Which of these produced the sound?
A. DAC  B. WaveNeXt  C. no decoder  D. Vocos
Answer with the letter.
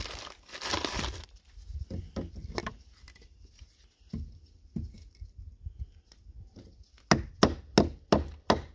C